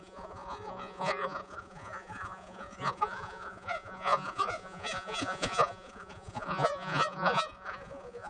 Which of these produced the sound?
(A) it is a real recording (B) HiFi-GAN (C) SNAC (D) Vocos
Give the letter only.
D